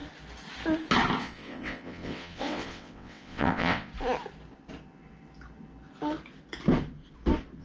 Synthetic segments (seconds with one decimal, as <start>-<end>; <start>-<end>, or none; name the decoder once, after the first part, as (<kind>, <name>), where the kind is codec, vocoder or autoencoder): 1.2-3.9 (vocoder, WaveNeXt)